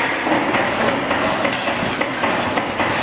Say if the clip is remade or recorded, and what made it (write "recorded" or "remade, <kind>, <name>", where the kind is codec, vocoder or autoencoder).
recorded